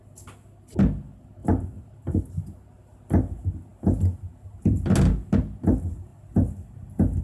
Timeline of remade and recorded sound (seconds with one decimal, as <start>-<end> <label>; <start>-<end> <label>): 0.0-1.4 recorded; 1.4-2.2 remade; 2.2-7.2 recorded